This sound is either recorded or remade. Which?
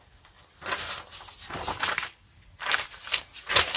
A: recorded